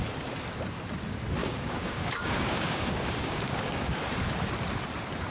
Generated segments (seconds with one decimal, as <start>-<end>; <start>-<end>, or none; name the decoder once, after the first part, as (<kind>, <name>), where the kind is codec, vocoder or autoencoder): 1.4-4.0 (codec, DAC)